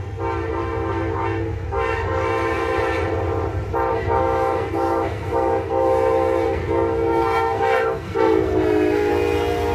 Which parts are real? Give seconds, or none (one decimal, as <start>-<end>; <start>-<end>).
0.0-0.5; 2.8-3.9; 9.1-9.7